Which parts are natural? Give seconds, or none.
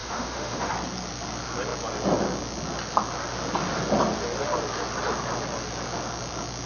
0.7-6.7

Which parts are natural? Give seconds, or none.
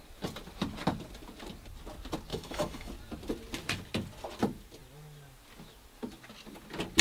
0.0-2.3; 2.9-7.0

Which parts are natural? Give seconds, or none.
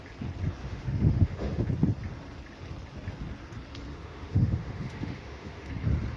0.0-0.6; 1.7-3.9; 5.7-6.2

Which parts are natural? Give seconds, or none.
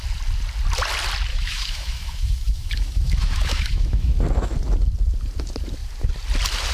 0.0-1.3; 4.1-6.7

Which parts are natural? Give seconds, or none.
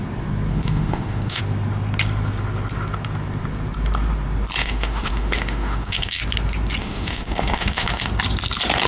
0.0-0.5; 1.4-4.6; 6.2-6.8; 8.1-8.9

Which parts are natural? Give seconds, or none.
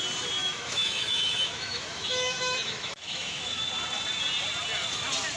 0.0-0.4; 3.6-5.4